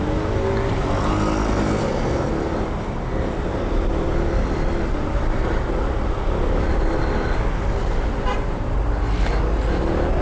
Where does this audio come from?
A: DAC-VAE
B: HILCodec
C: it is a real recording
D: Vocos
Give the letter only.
C